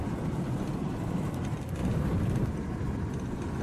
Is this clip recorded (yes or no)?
yes